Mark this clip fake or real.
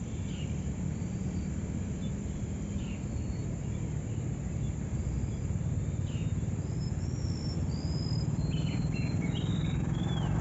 fake